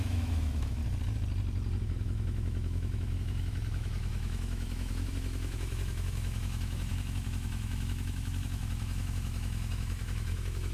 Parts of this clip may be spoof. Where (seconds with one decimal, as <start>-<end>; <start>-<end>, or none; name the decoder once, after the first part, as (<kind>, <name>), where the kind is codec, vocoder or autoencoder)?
0.0-0.8 (autoencoder, DAC-VAE); 1.8-10.7

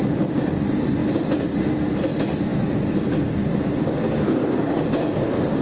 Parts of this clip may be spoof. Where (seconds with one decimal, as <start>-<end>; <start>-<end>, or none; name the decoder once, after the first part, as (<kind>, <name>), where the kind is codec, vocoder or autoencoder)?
none

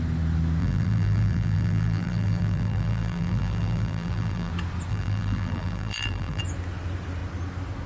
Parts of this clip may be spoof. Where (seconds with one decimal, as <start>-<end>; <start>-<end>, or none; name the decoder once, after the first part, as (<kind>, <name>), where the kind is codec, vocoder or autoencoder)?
0.6-4.5 (vocoder, BigVGAN v2); 4.9-6.4

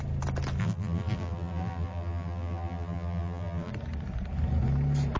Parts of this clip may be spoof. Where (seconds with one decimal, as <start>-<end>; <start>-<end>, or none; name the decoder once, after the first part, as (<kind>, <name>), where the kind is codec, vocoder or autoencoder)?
0.6-3.7 (vocoder, BigVGAN v2)

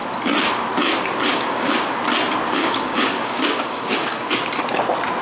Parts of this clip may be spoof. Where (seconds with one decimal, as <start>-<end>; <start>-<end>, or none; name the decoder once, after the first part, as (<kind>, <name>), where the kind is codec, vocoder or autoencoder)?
1.3-1.8 (codec, DAC); 2.6-4.3